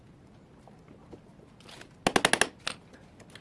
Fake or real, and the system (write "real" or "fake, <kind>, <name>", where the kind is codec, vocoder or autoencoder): real